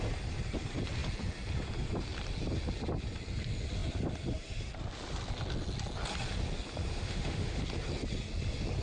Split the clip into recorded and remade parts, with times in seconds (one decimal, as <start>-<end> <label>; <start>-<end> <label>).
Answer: 0.0-6.9 recorded; 6.9-7.6 remade; 7.6-8.8 recorded